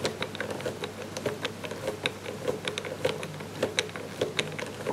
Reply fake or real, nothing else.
real